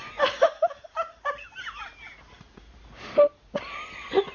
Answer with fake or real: real